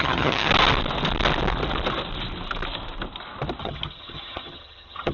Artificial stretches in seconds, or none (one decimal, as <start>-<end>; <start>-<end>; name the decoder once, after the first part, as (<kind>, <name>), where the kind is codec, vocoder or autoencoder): 0.0-0.5 (vocoder, HiFi-GAN); 3.6-5.1

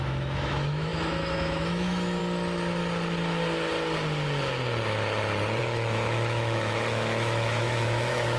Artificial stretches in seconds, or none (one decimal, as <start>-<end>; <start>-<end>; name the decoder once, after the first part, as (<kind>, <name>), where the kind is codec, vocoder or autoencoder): 0.0-2.2 (autoencoder, DAC-VAE); 5.6-8.4

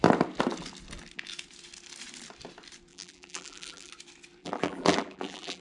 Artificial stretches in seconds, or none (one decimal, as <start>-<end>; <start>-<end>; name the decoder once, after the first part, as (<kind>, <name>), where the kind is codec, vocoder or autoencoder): 2.9-3.9 (vocoder, BigVGAN v2); 4.4-5.6

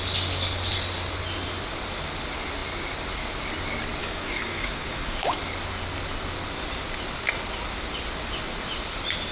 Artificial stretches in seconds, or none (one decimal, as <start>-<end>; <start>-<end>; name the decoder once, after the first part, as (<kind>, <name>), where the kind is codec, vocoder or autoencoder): 4.0-5.4 (codec, DAC)

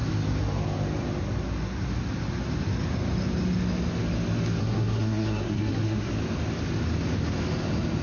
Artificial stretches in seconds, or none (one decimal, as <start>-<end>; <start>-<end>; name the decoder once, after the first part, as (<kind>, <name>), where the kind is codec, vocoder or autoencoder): 4.6-6.1 (codec, SNAC)